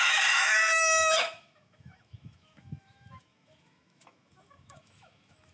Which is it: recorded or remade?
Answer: remade